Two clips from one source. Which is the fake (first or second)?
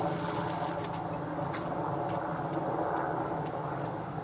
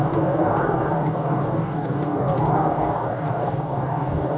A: second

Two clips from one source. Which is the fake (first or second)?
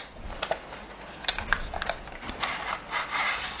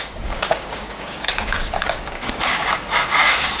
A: second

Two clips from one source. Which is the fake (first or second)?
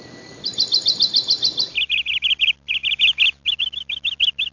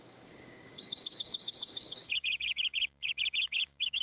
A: second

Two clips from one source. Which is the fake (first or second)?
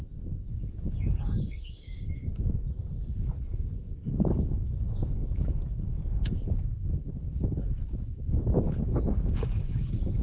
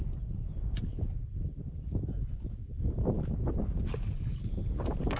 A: first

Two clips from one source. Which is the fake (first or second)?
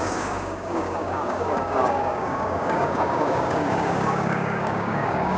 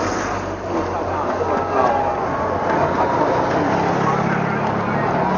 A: first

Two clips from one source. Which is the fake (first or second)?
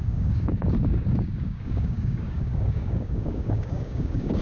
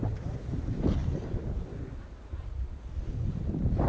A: first